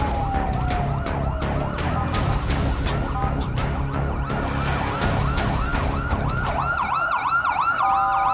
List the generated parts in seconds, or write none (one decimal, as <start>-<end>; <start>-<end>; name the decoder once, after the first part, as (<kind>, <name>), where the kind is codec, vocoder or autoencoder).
none